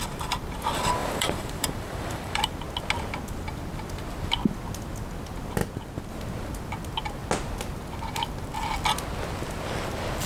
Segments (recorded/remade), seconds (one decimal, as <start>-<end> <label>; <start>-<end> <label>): 0.0-1.0 recorded; 1.0-2.5 remade; 2.5-10.3 recorded